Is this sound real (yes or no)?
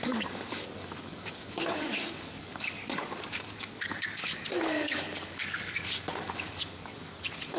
no